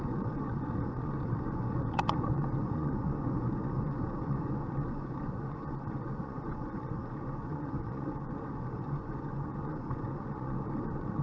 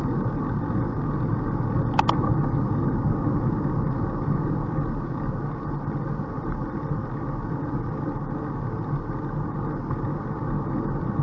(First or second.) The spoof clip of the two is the first